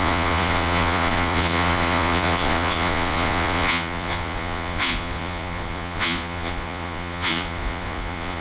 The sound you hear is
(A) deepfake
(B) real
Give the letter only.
A